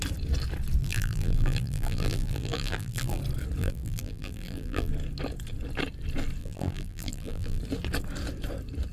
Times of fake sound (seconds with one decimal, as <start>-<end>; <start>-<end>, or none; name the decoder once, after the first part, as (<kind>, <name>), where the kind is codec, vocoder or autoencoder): 0.8-3.2 (vocoder, BigVGAN v2); 3.6-4.9; 6.4-7.6